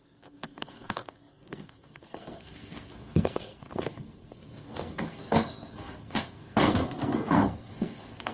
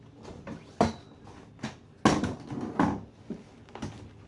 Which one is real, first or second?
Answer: second